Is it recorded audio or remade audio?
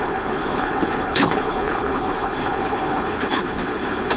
remade